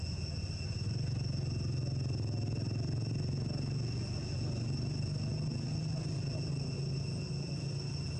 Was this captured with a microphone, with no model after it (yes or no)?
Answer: yes